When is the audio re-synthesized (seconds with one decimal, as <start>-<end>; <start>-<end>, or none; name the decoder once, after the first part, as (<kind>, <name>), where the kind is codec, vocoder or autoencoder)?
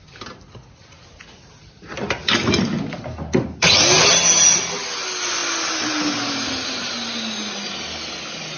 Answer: none